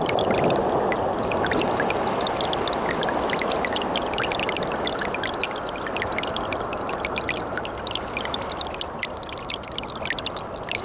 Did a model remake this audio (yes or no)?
no